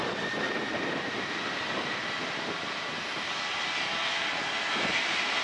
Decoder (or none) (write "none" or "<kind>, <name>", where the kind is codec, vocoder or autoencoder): vocoder, BigVGAN v2